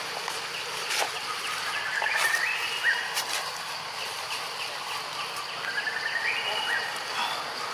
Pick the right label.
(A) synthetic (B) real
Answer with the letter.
B